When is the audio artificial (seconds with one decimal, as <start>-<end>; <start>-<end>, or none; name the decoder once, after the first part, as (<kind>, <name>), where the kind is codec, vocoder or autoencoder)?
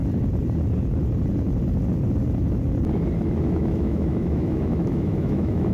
3.4-5.7 (autoencoder, DAC-VAE)